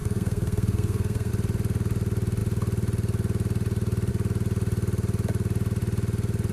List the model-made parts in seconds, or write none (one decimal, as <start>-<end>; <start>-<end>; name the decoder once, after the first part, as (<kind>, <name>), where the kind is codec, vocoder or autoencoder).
0.0-1.3 (codec, SNAC)